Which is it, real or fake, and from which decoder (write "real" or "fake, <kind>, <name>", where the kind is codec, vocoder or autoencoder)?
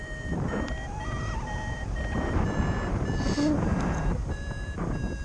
fake, vocoder, BigVGAN v2